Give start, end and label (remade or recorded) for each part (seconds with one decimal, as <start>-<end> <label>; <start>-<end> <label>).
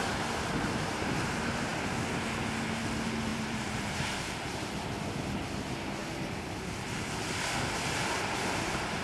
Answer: 0.0-3.3 recorded; 3.3-4.9 remade; 4.9-9.0 recorded